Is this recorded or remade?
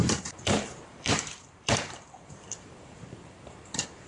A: remade